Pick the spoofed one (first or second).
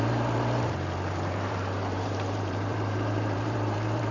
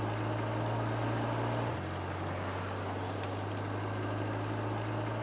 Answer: first